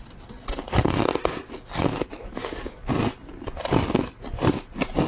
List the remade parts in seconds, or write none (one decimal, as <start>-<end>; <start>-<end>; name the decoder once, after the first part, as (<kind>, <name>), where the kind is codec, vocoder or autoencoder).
2.1-2.9 (codec, DAC)